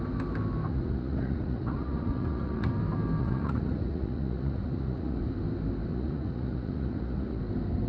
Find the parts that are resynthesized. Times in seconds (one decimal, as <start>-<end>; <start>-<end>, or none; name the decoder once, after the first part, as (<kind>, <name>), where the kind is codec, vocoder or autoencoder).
0.7-2.7 (vocoder, Vocos); 3.2-5.2; 5.9-7.4